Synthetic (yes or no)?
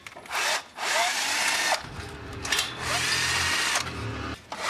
no